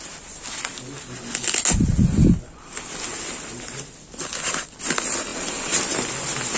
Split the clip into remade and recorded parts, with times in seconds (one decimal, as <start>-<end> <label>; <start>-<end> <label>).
0.0-6.6 recorded